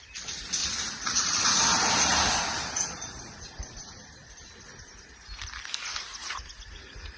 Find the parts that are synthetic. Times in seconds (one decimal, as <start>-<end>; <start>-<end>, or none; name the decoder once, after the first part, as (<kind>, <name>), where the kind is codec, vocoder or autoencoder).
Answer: 0.6-1.6 (vocoder, Vocos); 6.1-7.2